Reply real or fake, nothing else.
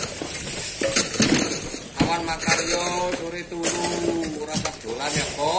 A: real